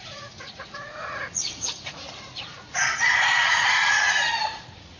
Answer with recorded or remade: remade